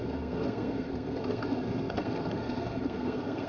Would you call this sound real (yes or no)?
no